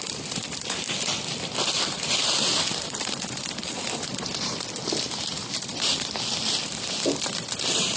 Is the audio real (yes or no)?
no